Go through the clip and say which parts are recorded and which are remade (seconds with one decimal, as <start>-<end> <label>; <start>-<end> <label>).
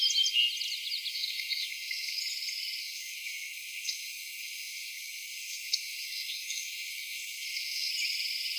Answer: 0.0-1.1 recorded; 1.1-2.2 remade; 2.2-2.8 recorded; 2.8-7.9 remade; 7.9-8.6 recorded